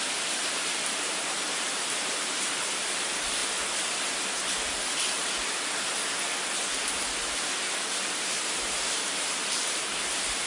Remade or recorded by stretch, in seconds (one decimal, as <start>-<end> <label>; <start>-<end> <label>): 0.0-3.4 remade; 3.4-7.9 recorded; 7.9-10.5 remade